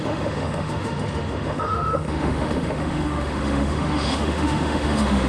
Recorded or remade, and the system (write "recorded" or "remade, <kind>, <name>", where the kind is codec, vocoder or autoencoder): remade, autoencoder, DAC-VAE